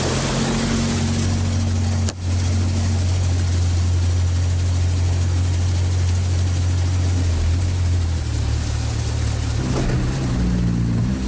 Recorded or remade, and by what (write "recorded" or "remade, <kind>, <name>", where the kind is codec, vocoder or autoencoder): recorded